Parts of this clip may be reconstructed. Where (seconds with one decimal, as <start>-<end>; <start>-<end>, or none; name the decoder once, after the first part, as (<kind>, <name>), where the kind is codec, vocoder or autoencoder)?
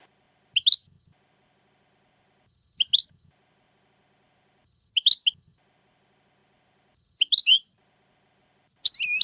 none